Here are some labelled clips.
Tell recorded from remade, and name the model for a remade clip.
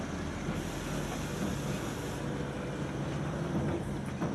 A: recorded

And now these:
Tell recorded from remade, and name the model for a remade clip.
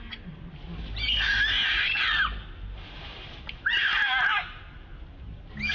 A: recorded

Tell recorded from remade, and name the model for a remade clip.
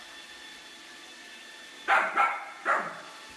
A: recorded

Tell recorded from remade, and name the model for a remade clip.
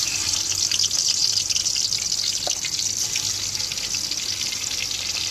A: recorded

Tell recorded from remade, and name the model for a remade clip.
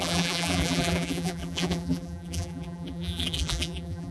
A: remade, vocoder, BigVGAN v2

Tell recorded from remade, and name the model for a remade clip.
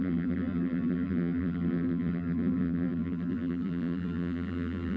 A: remade, vocoder, BigVGAN v2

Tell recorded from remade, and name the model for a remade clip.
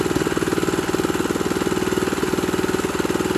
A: recorded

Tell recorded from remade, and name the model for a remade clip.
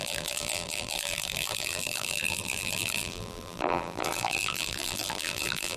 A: remade, vocoder, BigVGAN v2